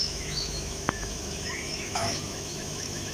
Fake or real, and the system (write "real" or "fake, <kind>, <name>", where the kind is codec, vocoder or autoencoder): fake, autoencoder, DAC-VAE